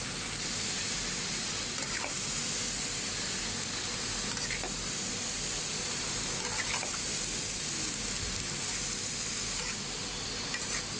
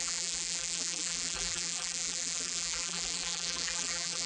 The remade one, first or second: second